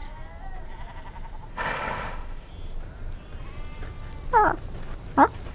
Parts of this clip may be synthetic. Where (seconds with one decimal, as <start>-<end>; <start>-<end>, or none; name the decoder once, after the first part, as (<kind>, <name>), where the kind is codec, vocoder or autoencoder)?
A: 1.5-2.5 (autoencoder, DAC-VAE)